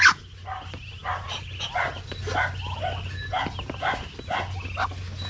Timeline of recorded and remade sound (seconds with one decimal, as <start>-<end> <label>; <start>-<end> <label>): 0.0-5.3 recorded